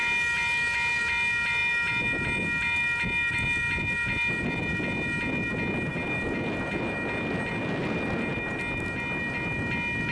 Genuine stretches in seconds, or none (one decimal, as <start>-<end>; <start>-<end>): 0.0-10.1